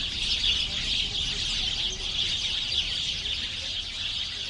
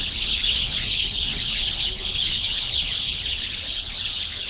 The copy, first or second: second